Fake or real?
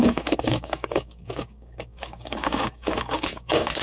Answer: fake